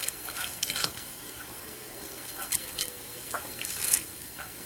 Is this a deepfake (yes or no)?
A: yes